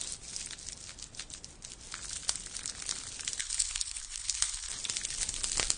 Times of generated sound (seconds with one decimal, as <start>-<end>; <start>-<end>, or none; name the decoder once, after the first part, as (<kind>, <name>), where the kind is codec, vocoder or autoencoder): 3.4-4.7 (codec, HILCodec)